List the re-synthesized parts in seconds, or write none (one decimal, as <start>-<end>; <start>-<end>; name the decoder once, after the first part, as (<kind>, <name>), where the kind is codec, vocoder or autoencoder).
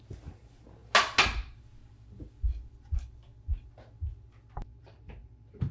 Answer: 0.0-0.8 (vocoder, BigVGAN v2); 1.4-1.8; 2.8-3.3; 4.8-5.7